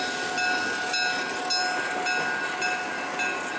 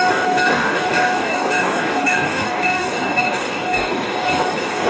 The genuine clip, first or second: first